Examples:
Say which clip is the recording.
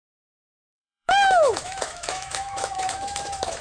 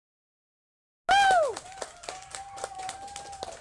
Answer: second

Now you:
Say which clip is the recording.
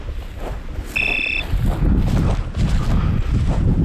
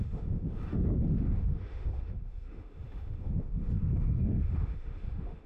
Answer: first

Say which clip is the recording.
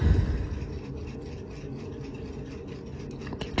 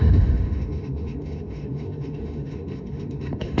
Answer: first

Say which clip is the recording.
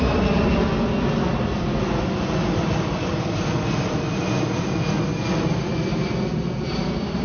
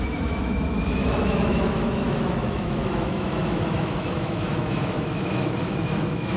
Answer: first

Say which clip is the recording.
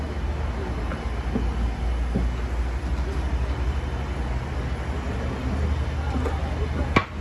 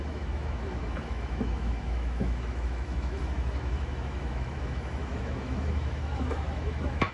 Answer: first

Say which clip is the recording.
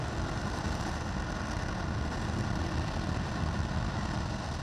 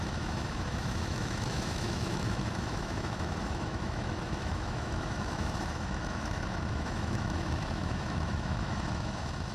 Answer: first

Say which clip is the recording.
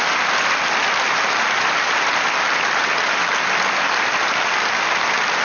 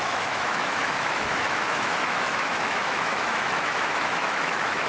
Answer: first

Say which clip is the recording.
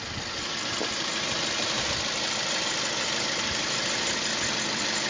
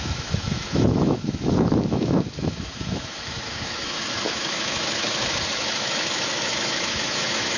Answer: first